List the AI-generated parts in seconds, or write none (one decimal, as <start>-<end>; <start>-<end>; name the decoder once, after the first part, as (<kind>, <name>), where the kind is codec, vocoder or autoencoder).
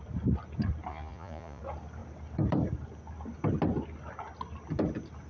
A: 0.9-1.6 (vocoder, Vocos)